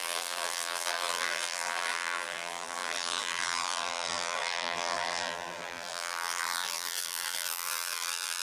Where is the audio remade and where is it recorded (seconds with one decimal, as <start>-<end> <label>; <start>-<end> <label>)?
0.0-8.4 remade